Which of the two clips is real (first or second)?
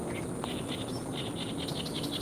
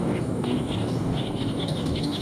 first